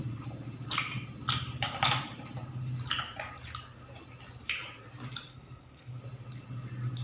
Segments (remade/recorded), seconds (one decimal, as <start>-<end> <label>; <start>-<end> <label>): 0.0-5.3 recorded; 5.3-6.0 remade; 6.0-7.0 recorded